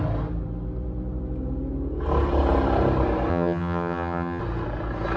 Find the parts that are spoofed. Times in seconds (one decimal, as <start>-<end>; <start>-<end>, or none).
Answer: 3.3-4.4